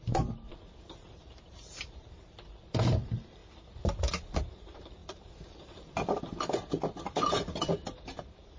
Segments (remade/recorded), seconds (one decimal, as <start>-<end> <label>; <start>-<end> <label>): 0.0-3.4 remade; 3.4-4.1 recorded; 4.1-8.6 remade